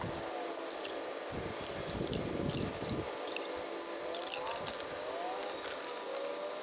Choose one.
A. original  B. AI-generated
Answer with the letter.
A